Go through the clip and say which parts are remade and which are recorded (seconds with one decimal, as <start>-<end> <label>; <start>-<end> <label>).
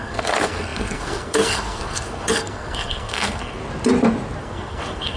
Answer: 0.0-3.6 remade; 3.6-4.4 recorded; 4.4-5.2 remade